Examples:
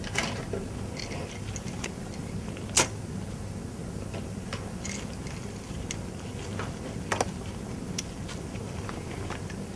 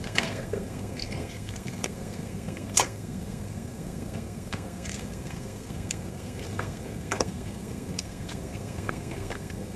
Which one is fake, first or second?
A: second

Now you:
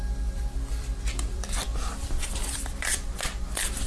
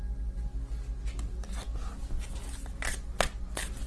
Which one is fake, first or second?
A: first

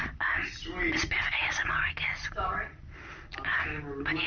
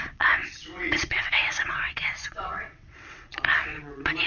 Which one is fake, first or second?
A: second